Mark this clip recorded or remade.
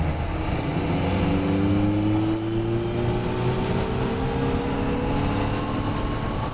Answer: recorded